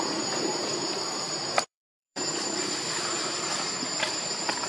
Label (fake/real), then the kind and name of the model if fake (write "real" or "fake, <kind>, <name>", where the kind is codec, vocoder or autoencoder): fake, vocoder, BigVGAN v2